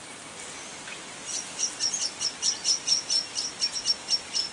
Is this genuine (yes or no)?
yes